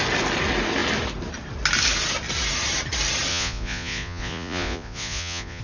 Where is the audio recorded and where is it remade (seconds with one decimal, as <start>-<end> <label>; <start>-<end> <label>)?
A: 0.0-3.3 recorded; 3.3-5.6 remade